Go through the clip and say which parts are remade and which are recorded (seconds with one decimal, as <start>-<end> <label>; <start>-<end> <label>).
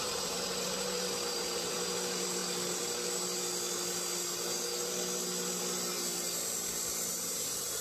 0.0-2.4 remade; 2.4-7.1 recorded; 7.1-7.8 remade